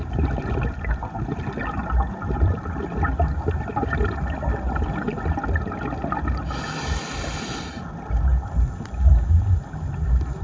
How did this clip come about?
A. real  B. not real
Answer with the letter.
A